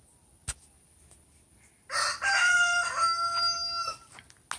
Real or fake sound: real